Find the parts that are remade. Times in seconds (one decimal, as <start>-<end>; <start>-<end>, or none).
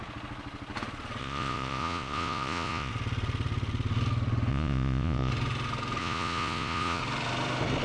1.2-2.9; 4.5-5.3; 6.0-7.0